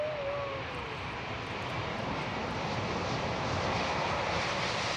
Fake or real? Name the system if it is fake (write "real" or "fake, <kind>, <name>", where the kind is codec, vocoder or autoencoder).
real